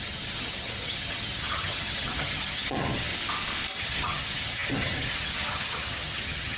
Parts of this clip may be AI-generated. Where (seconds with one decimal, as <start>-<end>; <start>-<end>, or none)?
0.0-3.1; 3.8-6.6